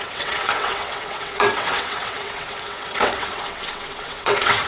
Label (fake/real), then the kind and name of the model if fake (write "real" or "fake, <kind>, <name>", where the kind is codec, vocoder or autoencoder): fake, vocoder, WaveNeXt